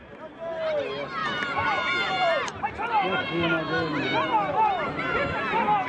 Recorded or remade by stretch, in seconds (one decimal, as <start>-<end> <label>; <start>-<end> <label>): 0.0-5.9 recorded